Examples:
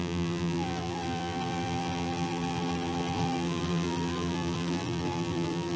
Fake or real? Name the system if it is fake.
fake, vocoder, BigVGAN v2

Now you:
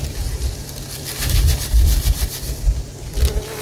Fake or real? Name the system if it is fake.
fake, vocoder, BigVGAN v2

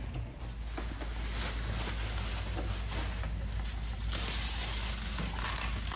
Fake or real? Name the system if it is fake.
real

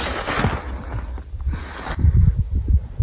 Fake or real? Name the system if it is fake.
real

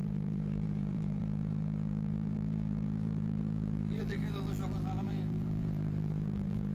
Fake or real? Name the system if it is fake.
fake, vocoder, BigVGAN v2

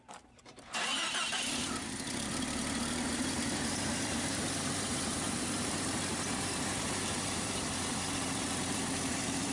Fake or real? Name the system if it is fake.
fake, vocoder, BigVGAN v2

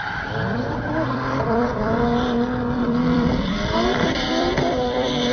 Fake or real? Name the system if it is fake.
fake, vocoder, BigVGAN v2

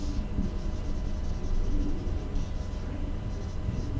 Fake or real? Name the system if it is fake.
real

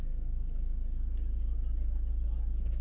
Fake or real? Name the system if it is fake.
real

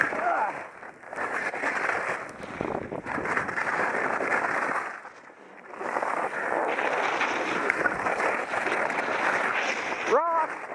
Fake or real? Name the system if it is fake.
fake, vocoder, BigVGAN v2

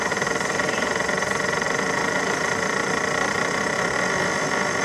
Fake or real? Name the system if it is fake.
fake, vocoder, BigVGAN v2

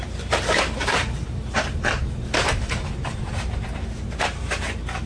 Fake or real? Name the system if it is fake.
fake, vocoder, BigVGAN v2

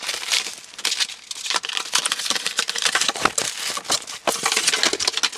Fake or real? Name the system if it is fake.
real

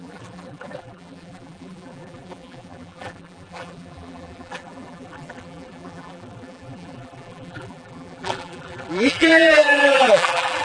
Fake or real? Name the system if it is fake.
fake, vocoder, BigVGAN v2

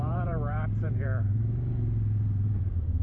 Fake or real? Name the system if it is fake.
fake, vocoder, BigVGAN v2